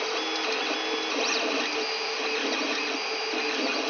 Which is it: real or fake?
real